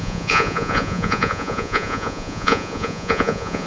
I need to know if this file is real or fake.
fake